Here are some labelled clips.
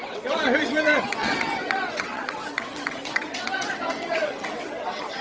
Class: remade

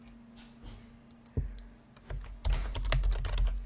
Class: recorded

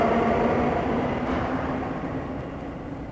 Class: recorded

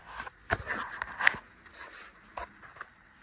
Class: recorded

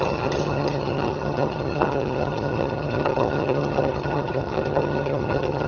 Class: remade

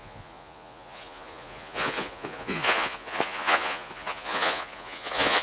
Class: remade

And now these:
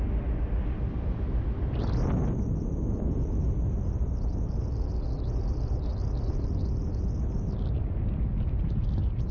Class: recorded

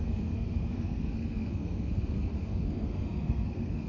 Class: remade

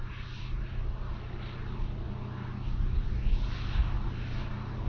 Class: recorded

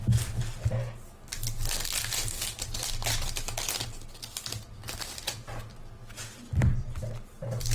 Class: recorded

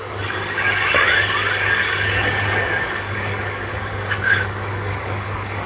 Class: remade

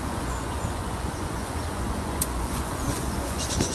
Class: remade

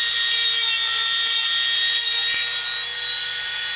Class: recorded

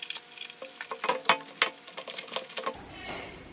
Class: recorded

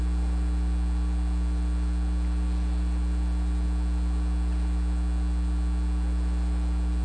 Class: recorded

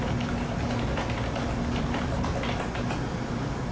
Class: recorded